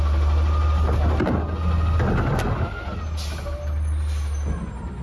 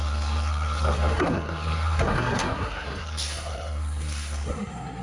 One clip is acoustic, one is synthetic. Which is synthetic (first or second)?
second